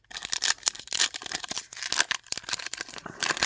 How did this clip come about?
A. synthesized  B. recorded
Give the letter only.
B